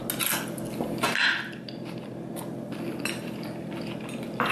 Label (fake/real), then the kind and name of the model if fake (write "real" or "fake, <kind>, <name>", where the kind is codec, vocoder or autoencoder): real